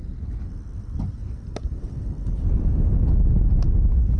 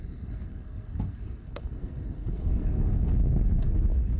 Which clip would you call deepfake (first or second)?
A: second